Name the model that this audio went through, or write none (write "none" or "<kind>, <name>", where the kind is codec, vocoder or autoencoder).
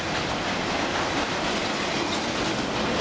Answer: none